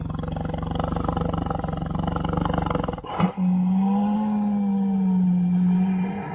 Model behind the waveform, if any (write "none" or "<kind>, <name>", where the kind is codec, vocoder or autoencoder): none